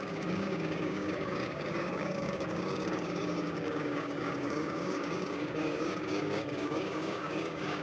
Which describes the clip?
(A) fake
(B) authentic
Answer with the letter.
A